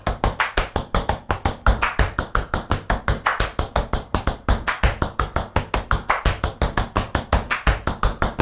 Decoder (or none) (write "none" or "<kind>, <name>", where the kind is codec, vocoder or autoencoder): none